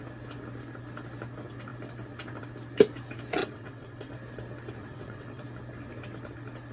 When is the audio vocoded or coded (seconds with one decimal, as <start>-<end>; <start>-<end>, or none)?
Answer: 3.4-4.1; 4.8-5.4

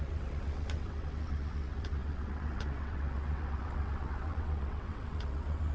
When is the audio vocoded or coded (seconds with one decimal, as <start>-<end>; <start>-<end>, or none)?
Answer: 0.0-5.7

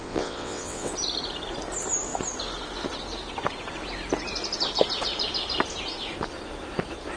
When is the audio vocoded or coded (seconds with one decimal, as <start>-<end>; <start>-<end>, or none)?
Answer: 0.0-0.9

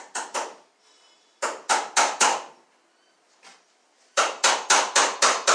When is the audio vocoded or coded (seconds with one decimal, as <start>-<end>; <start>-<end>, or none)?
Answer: none

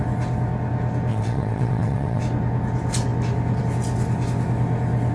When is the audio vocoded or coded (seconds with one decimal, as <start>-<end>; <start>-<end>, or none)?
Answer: 1.1-2.2

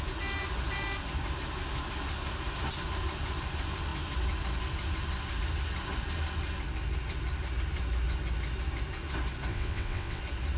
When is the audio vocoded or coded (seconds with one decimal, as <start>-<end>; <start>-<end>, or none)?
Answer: 9.5-10.2